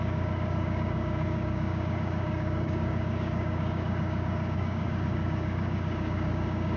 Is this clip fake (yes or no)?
yes